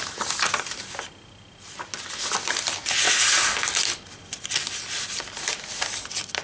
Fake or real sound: real